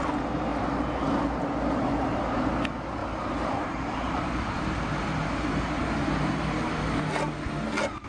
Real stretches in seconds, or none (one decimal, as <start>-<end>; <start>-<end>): 0.0-3.0; 7.0-8.1